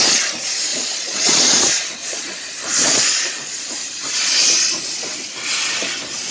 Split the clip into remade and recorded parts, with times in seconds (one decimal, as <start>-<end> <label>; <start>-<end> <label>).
0.0-0.7 recorded; 0.7-1.6 remade; 1.6-2.0 recorded; 2.0-3.7 remade; 3.7-6.3 recorded